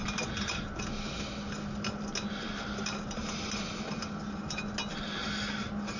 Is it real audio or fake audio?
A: real